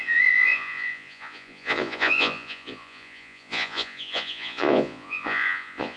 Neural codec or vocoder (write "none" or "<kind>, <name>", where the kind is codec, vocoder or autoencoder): vocoder, Vocos